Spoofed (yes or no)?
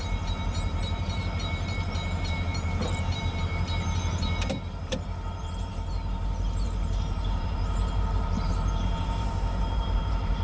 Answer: yes